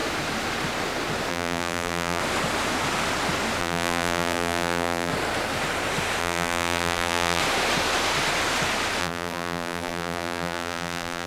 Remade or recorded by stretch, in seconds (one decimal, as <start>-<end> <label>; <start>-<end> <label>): 0.0-1.3 recorded; 1.3-2.2 remade; 2.2-3.6 recorded; 3.6-5.1 remade; 5.1-6.2 recorded; 6.2-7.4 remade; 7.4-9.0 recorded; 9.0-11.3 remade